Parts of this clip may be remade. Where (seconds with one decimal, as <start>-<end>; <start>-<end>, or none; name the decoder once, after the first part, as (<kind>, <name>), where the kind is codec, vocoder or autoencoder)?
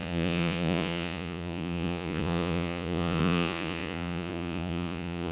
0.0-5.3 (vocoder, Vocos)